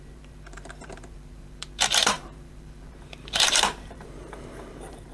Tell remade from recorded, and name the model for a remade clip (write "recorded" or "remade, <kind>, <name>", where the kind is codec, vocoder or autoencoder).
remade, vocoder, BigVGAN v2